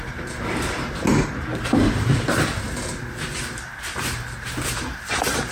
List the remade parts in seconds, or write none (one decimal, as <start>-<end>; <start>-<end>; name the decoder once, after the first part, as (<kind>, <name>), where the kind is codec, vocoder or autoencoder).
none